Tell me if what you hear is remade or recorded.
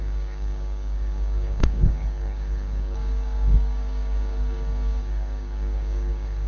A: remade